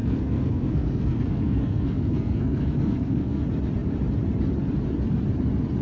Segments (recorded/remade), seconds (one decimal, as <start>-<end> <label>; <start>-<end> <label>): 0.0-3.4 remade; 3.4-5.8 recorded